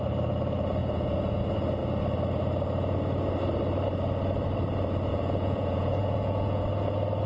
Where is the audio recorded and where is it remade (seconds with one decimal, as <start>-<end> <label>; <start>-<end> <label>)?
0.0-0.8 recorded; 0.8-1.4 remade; 1.4-5.1 recorded; 5.1-6.6 remade; 6.6-7.3 recorded